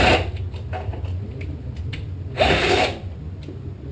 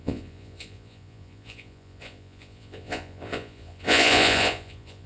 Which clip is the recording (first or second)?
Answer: first